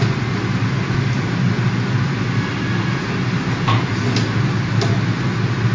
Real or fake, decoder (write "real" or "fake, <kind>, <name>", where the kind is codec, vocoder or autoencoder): real